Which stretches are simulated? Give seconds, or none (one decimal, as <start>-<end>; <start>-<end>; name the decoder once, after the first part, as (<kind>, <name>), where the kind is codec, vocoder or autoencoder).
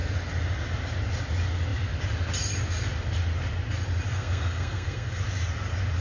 4.1-5.2 (codec, SNAC)